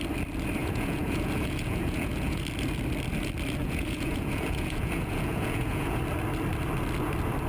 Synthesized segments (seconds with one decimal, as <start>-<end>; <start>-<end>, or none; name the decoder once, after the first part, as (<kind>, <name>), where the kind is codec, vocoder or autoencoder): 0.6-2.4 (vocoder, Vocos); 3.6-6.0